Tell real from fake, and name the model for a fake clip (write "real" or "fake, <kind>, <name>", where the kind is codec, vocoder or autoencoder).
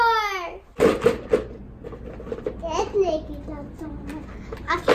real